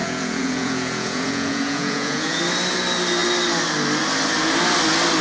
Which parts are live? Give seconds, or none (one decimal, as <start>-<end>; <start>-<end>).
2.4-5.2